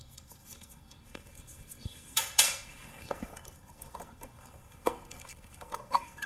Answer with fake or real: fake